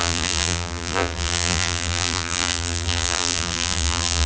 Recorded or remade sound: remade